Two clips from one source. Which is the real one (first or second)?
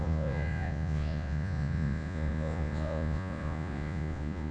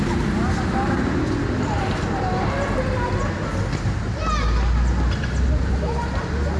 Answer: second